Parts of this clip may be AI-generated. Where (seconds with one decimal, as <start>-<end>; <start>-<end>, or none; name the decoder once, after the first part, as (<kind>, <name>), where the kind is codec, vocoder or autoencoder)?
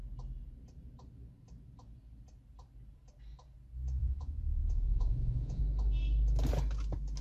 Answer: 4.0-5.6 (vocoder, Vocos)